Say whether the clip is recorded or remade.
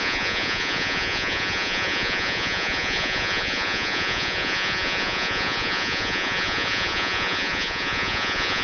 remade